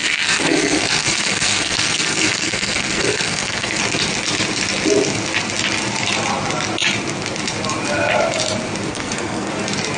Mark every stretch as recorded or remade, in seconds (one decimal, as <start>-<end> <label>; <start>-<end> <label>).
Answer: 0.0-3.8 remade; 3.8-8.9 recorded; 8.9-9.5 remade; 9.5-10.0 recorded